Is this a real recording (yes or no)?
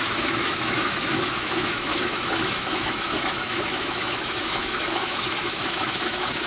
no